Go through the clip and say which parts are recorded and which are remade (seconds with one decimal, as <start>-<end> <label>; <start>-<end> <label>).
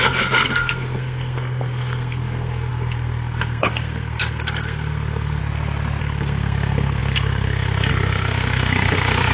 0.0-5.4 remade; 5.4-6.0 recorded; 6.0-9.3 remade